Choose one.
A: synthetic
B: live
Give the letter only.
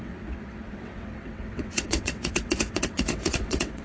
A